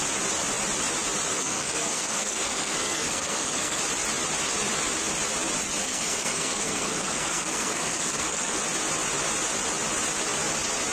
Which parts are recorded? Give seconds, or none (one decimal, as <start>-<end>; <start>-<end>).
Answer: 0.0-1.3; 3.8-5.8; 8.6-10.9